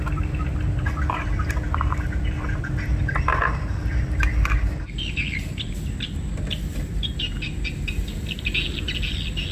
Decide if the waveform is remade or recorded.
recorded